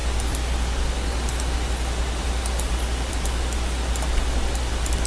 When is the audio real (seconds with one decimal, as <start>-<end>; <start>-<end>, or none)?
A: 0.0-5.1